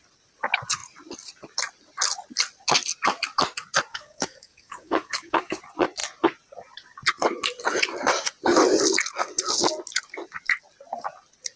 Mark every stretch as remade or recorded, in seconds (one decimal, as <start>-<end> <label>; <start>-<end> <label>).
0.0-3.9 recorded; 3.9-5.6 remade; 5.6-11.6 recorded